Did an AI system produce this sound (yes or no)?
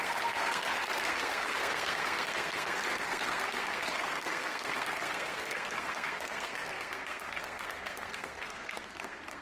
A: yes